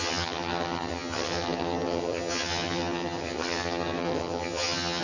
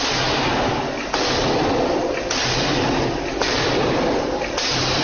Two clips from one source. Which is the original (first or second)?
second